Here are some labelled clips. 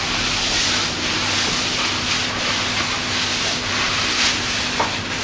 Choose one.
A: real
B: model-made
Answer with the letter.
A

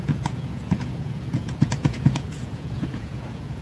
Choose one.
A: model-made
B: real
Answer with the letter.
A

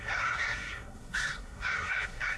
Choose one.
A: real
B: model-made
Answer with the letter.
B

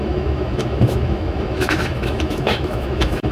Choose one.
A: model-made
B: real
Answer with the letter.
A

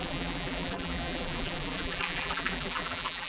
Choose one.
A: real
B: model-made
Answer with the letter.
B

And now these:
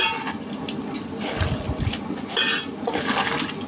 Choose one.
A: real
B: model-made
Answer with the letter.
A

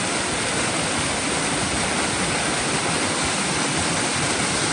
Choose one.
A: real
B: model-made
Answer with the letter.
A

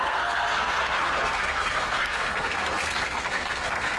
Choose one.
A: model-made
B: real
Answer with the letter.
A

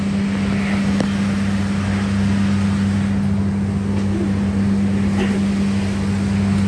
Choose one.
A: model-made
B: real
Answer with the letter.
B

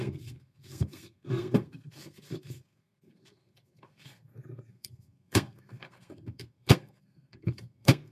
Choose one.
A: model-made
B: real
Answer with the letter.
A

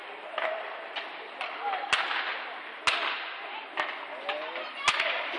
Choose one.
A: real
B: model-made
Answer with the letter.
A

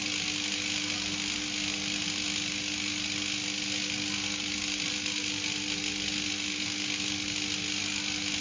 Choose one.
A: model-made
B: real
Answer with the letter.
B